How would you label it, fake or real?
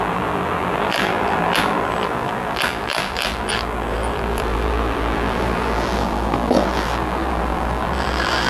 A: fake